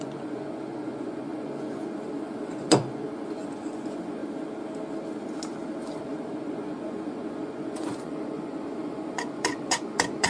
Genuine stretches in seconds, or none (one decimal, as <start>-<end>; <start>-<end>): 4.2-6.0